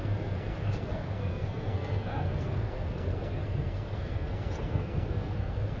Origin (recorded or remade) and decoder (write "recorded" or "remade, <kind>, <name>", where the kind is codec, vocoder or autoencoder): remade, codec, SNAC